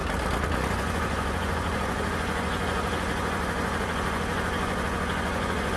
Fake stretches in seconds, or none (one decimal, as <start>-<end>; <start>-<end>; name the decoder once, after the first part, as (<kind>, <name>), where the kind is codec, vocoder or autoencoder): 0.7-5.8 (vocoder, Vocos)